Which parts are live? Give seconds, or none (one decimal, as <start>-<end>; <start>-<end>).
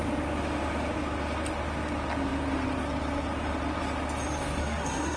0.0-4.6